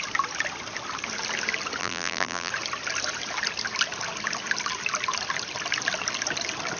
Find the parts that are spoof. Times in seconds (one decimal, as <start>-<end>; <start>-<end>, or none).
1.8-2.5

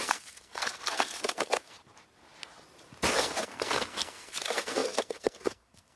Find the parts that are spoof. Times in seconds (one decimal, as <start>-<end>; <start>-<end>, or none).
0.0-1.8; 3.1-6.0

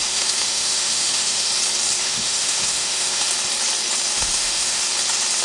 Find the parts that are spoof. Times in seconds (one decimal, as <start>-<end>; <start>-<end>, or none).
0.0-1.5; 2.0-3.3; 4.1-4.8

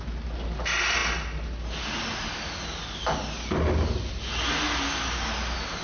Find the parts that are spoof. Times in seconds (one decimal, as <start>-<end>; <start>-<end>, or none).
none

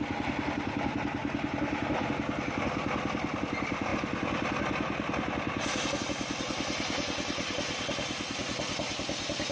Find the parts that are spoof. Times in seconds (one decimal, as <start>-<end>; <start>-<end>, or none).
none

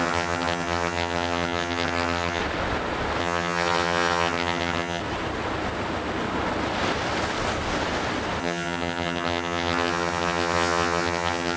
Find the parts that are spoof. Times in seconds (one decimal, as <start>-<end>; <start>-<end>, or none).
0.0-2.4; 3.2-5.0; 8.4-11.6